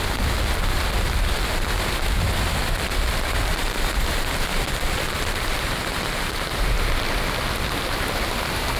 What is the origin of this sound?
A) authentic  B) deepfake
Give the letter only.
B